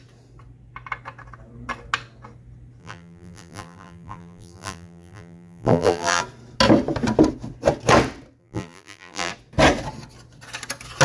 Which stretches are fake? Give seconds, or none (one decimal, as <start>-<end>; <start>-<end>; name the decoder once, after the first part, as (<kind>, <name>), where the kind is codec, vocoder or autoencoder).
2.8-6.2 (vocoder, BigVGAN v2); 8.4-9.3

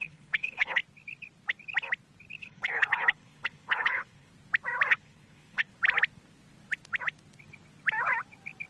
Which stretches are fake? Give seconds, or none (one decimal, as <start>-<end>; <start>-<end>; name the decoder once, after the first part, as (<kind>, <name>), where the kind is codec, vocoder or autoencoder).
0.0-0.8 (codec, HILCodec); 2.4-4.3; 4.9-5.7

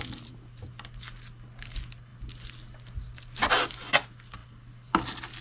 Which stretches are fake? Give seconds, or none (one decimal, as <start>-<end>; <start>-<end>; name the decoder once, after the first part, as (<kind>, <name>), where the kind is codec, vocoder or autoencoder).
none